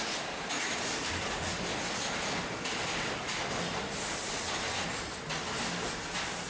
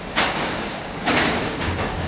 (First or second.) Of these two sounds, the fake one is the second